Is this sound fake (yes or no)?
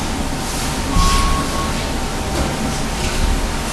no